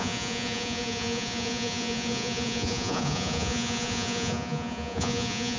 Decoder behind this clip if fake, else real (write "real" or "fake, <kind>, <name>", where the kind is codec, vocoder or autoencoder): fake, vocoder, Vocos